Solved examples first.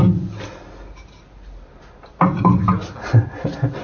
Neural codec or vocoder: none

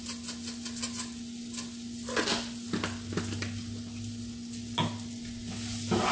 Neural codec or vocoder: none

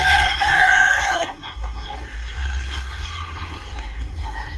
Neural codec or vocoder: codec, SNAC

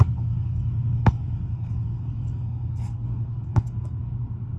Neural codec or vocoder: codec, SNAC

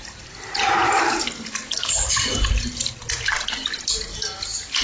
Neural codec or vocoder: none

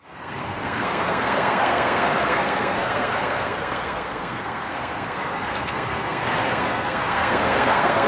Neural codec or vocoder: codec, SNAC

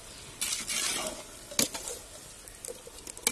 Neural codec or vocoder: none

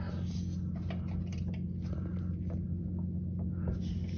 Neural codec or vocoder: none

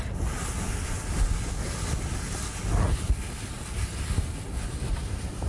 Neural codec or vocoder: none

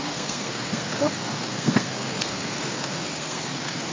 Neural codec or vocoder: codec, SNAC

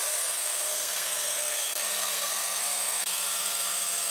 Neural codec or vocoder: codec, SNAC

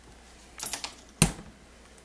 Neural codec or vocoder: none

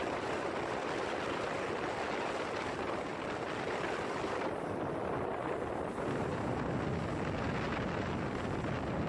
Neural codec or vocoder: none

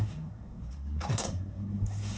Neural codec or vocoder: codec, SNAC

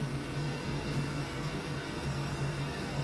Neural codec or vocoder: codec, SNAC